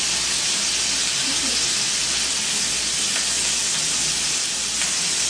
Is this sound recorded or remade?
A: recorded